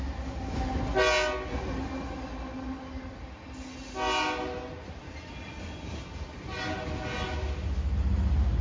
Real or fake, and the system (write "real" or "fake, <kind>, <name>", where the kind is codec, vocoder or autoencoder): real